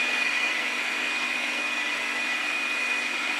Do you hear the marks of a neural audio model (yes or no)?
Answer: yes